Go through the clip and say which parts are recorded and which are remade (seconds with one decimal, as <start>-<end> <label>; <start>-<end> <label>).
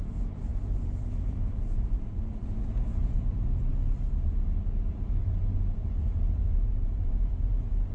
0.0-3.7 remade; 3.7-4.9 recorded; 4.9-7.9 remade